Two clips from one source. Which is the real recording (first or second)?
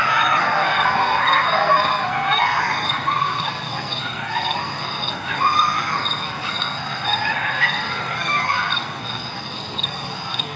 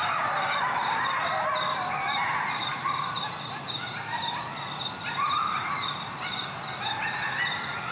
second